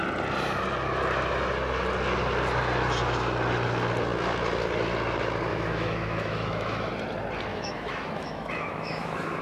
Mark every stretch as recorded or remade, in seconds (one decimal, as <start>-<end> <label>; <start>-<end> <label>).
0.0-5.5 recorded; 5.5-6.9 remade; 6.9-7.5 recorded; 7.5-9.4 remade